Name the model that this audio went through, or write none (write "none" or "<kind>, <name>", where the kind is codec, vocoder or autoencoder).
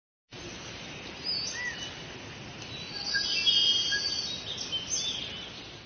none